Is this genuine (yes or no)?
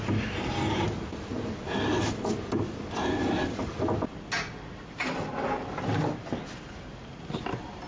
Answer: yes